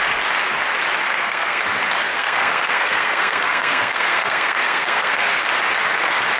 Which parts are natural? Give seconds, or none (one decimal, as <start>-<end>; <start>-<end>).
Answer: 0.0-1.1; 1.6-2.0; 5.4-6.4